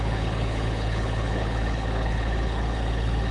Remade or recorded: remade